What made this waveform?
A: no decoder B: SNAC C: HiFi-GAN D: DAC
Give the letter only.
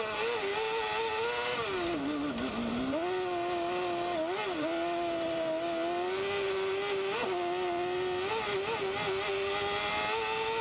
A